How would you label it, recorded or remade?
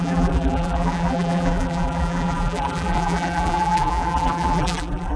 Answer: remade